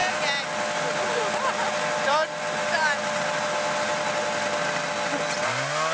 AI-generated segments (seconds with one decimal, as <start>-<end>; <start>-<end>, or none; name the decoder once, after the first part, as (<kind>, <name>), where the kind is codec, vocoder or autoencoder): none